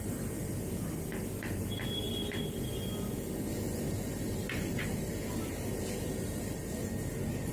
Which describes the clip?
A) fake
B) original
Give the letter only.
B